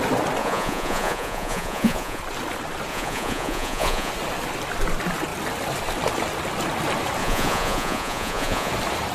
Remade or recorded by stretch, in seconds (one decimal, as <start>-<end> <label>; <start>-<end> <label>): 0.0-0.4 recorded; 0.4-2.2 remade; 2.2-2.9 recorded; 2.9-4.1 remade; 4.1-7.2 recorded; 7.2-8.7 remade; 8.7-9.1 recorded